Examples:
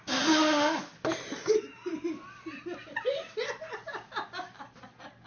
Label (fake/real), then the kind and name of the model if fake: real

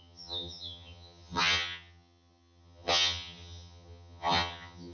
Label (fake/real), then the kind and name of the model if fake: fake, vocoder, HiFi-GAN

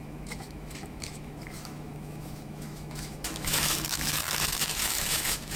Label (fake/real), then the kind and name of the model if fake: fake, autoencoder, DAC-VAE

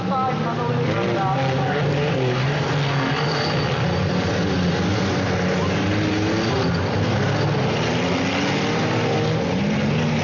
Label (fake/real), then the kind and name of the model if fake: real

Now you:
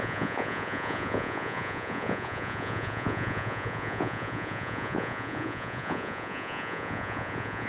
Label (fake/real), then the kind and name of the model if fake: fake, vocoder, Vocos